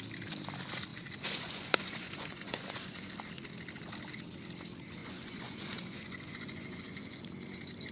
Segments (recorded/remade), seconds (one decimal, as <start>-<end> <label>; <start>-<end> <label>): 0.0-0.9 recorded; 0.9-3.1 remade; 3.1-5.0 recorded; 5.0-7.2 remade; 7.2-7.9 recorded